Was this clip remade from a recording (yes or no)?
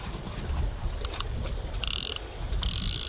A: no